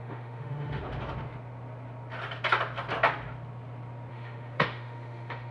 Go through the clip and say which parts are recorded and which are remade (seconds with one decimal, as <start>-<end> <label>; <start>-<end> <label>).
0.0-0.8 remade; 0.8-4.1 recorded; 4.1-5.5 remade